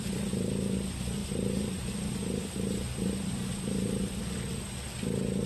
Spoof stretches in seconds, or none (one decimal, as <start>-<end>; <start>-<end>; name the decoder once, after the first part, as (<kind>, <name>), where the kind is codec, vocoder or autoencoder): 1.2-4.3 (vocoder, BigVGAN v2)